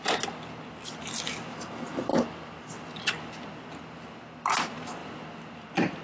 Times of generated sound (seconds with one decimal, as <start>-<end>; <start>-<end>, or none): none